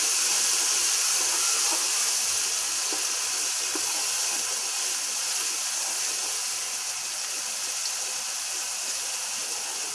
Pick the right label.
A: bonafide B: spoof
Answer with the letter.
A